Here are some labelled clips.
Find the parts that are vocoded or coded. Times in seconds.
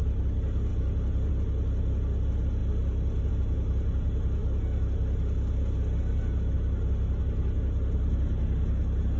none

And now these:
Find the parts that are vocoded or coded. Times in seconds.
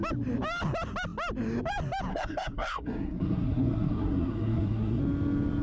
2.1-5.0 (codec, SNAC)